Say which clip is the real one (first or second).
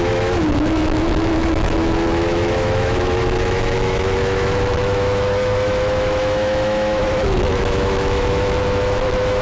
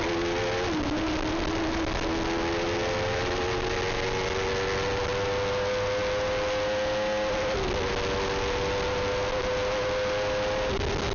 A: second